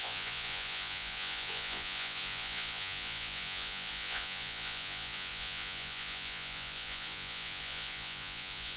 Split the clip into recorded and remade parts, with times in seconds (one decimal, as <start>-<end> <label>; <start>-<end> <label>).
0.0-8.8 remade